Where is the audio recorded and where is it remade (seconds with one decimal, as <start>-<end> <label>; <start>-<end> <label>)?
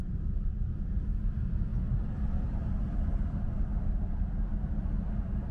0.0-0.5 remade; 0.5-5.5 recorded